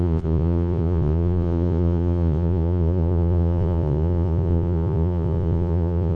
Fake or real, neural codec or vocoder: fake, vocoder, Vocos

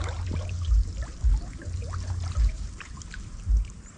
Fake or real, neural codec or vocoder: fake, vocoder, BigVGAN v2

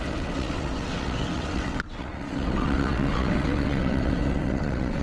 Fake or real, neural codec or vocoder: fake, vocoder, WaveNeXt